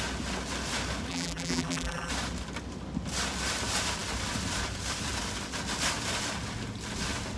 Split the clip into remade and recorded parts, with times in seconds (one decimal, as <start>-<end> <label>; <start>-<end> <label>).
0.0-1.1 recorded; 1.1-2.1 remade; 2.1-7.4 recorded

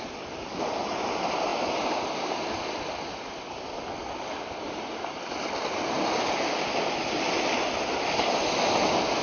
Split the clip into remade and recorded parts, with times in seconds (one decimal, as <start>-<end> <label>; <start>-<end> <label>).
0.0-9.2 recorded

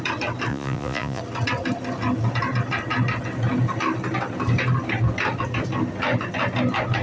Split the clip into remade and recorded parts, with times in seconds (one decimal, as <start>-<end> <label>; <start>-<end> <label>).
0.0-0.5 recorded; 0.5-1.2 remade; 1.2-7.0 recorded